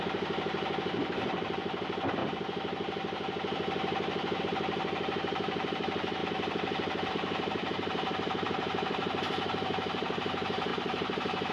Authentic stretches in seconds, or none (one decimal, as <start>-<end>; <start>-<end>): 2.2-4.4; 6.2-7.1